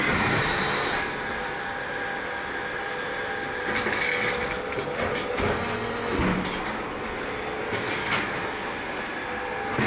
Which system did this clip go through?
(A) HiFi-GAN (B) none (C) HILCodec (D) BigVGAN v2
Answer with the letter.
B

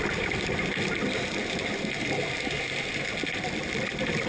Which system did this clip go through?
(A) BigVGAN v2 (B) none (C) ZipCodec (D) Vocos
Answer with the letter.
B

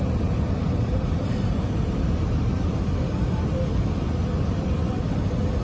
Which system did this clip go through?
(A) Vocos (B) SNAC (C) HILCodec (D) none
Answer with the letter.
D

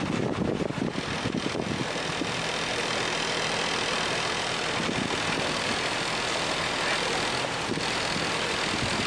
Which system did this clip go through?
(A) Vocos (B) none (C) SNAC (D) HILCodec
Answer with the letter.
B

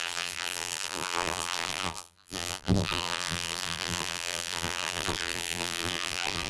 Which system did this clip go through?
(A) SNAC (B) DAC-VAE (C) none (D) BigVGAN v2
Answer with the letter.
D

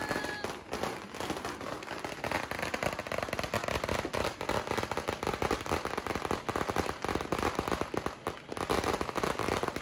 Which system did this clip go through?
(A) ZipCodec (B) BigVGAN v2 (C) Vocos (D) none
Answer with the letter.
D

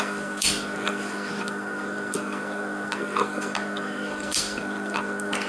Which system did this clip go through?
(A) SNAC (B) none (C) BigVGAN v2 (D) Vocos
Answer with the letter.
A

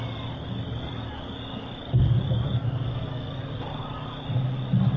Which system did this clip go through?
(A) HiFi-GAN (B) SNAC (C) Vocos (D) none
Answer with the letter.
D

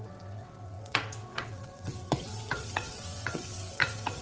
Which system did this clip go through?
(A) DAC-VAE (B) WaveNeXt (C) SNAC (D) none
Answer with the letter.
B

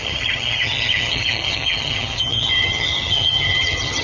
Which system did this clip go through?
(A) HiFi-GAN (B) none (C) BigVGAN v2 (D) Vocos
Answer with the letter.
A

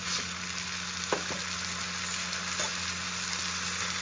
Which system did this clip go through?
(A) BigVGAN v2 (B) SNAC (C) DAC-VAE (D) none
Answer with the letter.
D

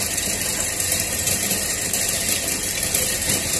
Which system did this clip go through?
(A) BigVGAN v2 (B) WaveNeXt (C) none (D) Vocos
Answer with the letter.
A